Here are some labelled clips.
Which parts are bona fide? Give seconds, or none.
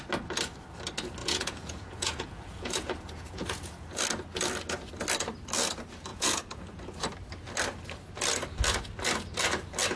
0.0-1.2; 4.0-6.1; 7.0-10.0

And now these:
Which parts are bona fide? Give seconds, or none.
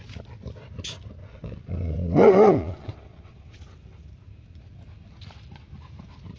0.0-1.2; 3.6-6.4